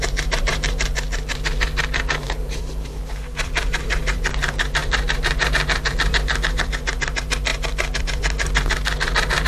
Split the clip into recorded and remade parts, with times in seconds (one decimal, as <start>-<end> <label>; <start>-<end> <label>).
0.0-9.5 remade